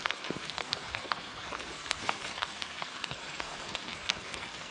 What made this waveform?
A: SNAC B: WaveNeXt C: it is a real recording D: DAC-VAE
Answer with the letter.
A